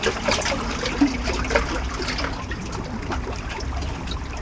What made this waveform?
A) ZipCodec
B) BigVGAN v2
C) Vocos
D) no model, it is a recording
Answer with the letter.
B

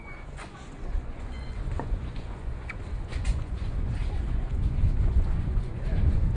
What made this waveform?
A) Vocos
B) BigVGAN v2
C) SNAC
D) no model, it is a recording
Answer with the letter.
A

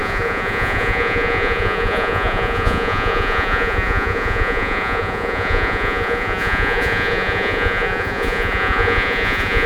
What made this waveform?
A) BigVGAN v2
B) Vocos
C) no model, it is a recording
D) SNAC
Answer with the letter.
B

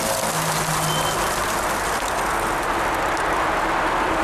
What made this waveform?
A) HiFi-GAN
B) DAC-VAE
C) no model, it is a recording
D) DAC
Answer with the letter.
C